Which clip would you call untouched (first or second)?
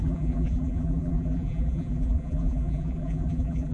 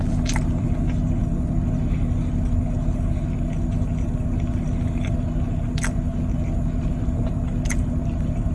second